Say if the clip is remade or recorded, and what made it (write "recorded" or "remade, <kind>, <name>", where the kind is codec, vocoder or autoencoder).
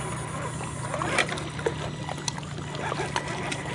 recorded